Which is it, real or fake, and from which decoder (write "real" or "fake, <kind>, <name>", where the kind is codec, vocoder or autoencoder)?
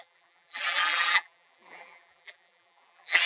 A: fake, vocoder, BigVGAN v2